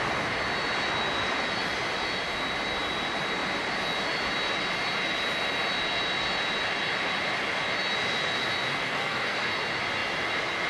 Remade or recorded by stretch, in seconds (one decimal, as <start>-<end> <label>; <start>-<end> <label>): 0.0-8.7 recorded; 8.7-9.5 remade; 9.5-10.7 recorded